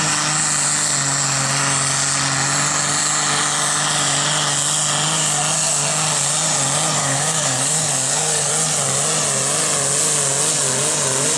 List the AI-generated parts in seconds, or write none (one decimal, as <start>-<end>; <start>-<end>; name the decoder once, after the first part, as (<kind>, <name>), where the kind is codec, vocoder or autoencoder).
7.0-8.5 (codec, DAC)